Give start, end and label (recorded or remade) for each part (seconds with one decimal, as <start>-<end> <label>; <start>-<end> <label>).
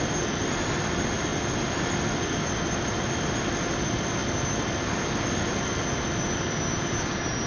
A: 0.0-7.5 recorded